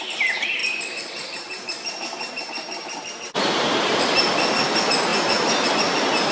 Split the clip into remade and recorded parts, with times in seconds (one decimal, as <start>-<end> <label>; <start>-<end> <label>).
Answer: 0.0-0.6 recorded; 0.6-4.0 remade; 4.0-6.3 recorded